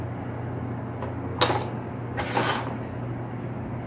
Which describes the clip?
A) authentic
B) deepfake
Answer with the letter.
A